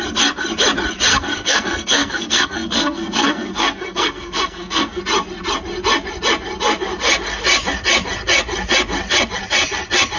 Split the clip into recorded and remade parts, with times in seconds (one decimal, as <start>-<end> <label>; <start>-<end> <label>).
0.0-1.1 recorded; 1.1-5.0 remade; 5.0-10.2 recorded